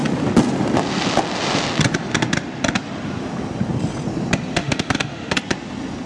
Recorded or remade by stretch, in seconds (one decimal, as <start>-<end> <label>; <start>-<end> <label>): 0.0-4.6 recorded; 4.6-5.3 remade; 5.3-6.1 recorded